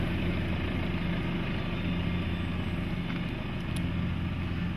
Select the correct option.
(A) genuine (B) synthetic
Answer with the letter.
A